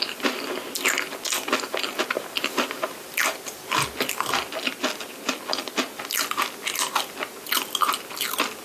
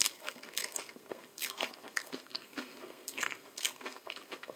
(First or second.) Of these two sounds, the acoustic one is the first